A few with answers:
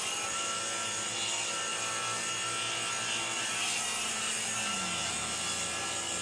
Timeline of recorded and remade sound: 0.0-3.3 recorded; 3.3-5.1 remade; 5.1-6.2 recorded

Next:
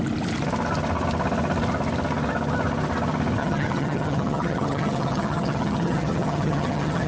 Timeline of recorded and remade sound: 0.0-3.4 recorded; 3.4-7.1 remade

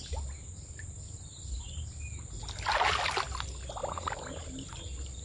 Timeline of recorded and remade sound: 0.0-5.2 recorded

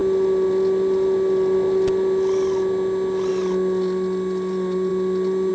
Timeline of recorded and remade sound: 0.0-5.5 recorded